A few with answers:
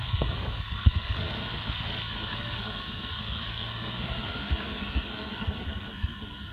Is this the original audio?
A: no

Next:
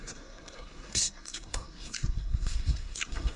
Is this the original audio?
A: no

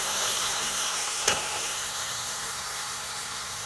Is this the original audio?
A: no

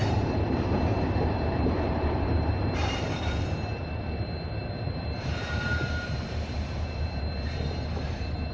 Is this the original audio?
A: no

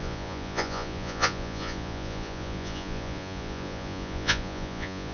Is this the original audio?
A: no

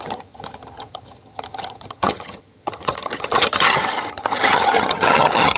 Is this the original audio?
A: no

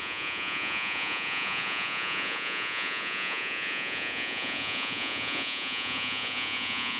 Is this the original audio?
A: no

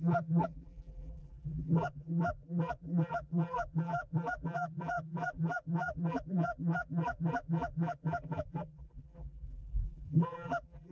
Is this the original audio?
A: no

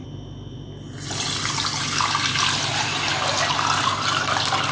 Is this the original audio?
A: yes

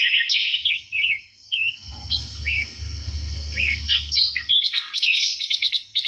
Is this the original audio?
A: no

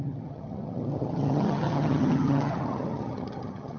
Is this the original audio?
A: no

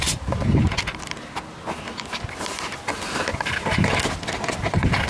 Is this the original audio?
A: yes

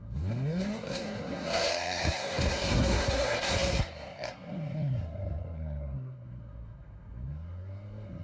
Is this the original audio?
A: no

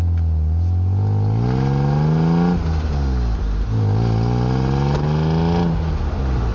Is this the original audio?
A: yes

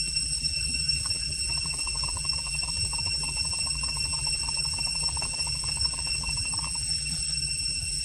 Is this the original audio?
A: no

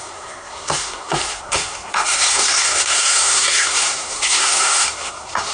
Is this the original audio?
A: no